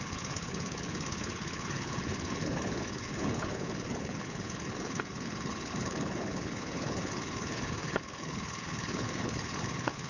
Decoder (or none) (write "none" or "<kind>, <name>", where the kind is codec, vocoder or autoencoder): codec, HILCodec